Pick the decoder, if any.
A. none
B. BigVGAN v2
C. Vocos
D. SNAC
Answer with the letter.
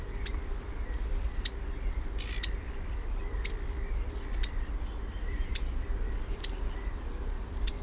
B